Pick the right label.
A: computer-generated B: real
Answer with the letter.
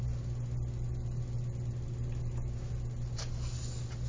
B